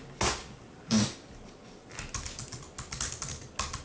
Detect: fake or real real